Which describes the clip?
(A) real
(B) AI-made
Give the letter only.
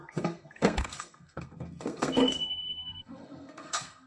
B